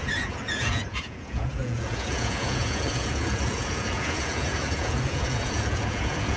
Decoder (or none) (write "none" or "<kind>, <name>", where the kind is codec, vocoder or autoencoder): vocoder, Vocos